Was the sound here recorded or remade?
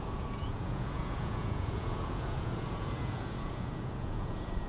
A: remade